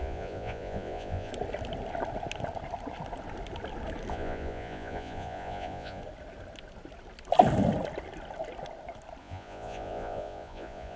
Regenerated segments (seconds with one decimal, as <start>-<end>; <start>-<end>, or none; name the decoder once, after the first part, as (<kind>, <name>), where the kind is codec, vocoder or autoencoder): 0.0-1.3 (vocoder, Vocos); 4.1-6.0; 9.2-11.0